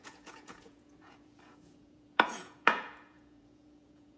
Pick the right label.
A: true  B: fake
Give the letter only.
B